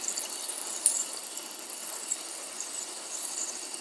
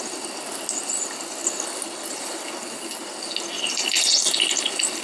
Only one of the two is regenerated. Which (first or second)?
first